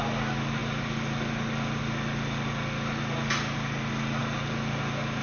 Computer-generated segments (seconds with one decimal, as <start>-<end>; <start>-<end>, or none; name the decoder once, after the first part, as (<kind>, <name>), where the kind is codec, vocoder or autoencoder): none